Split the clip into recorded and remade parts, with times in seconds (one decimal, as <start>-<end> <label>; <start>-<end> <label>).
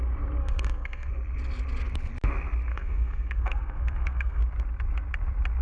0.0-0.4 recorded; 0.4-1.1 remade; 1.1-2.7 recorded; 2.7-4.4 remade; 4.4-5.6 recorded